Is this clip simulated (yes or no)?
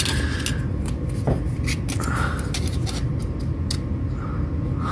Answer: no